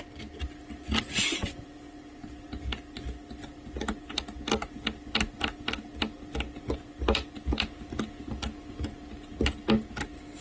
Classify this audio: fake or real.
real